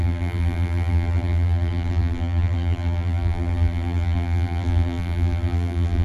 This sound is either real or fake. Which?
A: fake